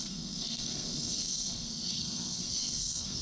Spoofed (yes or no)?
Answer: yes